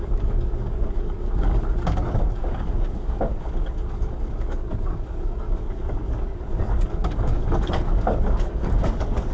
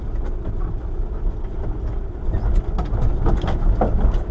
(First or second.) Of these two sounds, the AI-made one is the first